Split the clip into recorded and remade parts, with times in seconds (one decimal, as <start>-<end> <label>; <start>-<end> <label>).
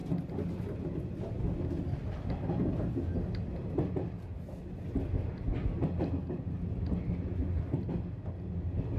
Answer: 0.0-9.0 recorded